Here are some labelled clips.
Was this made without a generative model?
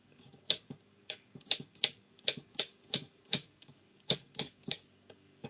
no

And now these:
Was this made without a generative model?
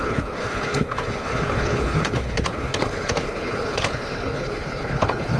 no